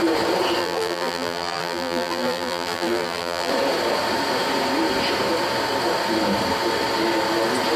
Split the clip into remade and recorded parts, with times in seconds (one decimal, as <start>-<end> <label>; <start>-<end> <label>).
0.0-0.6 recorded; 0.6-3.5 remade; 3.5-7.8 recorded